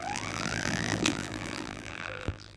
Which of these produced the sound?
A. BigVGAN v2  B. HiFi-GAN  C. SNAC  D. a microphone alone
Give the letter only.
A